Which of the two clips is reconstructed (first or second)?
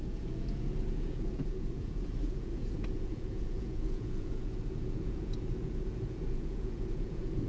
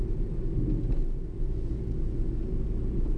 first